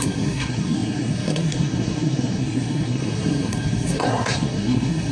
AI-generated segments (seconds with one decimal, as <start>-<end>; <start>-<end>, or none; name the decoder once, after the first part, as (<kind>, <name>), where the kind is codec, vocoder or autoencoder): 0.0-5.1 (codec, SNAC)